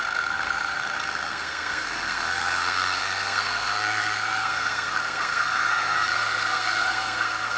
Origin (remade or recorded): remade